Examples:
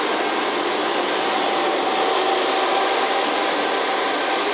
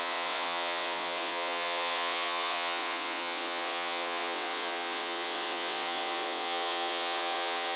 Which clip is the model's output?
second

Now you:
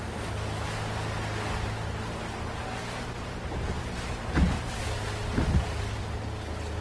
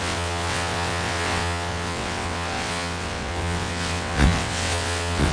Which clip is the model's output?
second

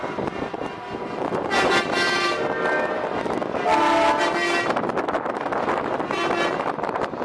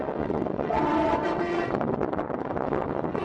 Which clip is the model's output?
second